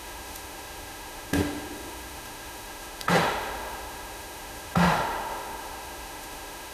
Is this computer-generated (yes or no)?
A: yes